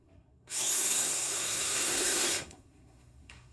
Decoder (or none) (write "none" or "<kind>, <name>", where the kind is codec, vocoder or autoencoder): codec, SNAC